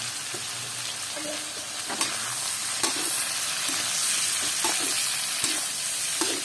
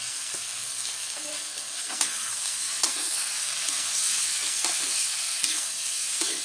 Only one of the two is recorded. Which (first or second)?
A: first